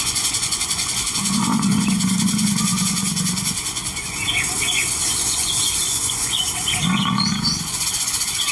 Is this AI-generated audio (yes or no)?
yes